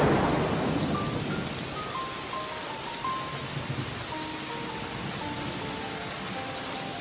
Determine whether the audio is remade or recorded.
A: recorded